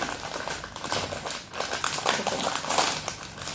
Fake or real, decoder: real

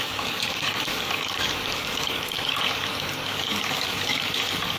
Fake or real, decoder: fake, codec, DAC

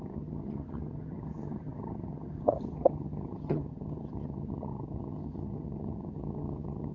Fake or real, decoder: fake, vocoder, HiFi-GAN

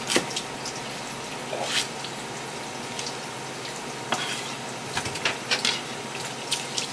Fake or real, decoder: real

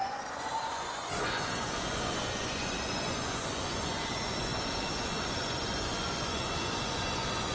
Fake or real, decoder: fake, vocoder, Vocos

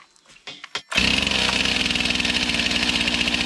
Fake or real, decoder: real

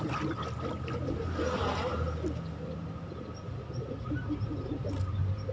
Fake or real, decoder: real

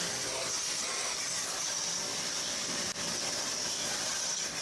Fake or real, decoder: real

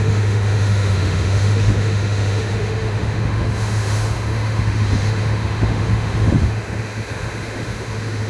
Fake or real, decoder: fake, autoencoder, DAC-VAE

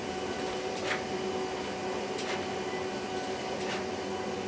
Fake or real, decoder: real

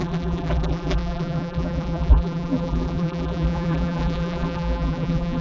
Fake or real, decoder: fake, vocoder, BigVGAN v2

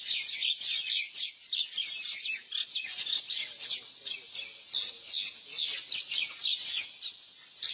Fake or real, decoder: real